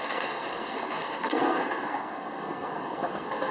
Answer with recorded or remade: remade